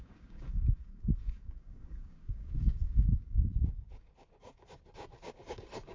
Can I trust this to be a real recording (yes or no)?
no